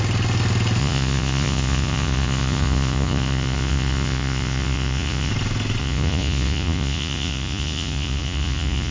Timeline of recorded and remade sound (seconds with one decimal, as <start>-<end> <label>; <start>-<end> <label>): 0.0-0.8 recorded; 0.8-5.3 remade; 5.3-5.8 recorded; 5.8-8.9 remade